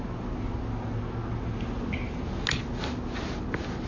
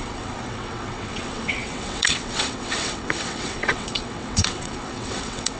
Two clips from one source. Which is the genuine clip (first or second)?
first